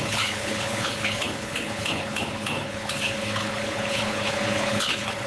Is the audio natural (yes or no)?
no